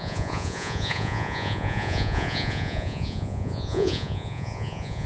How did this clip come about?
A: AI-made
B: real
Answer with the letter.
A